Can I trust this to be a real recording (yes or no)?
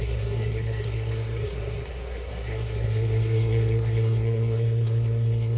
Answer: no